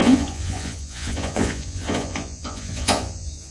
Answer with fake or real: fake